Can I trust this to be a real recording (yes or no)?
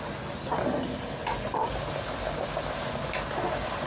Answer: yes